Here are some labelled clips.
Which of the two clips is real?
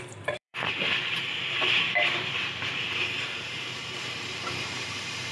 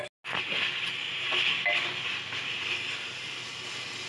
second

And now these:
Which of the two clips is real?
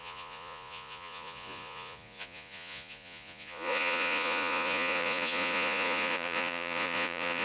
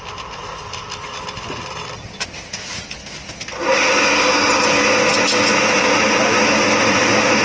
second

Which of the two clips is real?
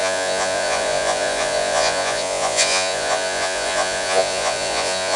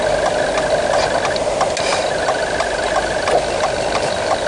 second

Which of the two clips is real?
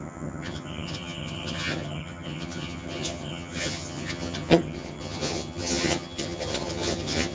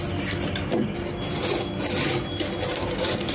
second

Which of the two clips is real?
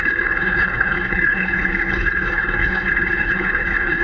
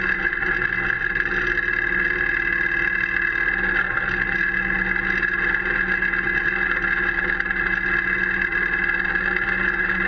second